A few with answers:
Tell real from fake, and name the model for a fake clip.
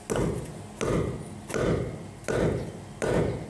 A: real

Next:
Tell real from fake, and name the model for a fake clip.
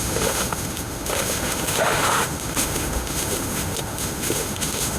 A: fake, autoencoder, DAC-VAE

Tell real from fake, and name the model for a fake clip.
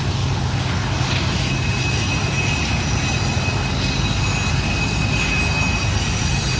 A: real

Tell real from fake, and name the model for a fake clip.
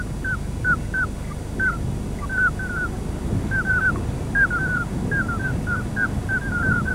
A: real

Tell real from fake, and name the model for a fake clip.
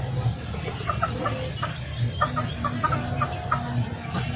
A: real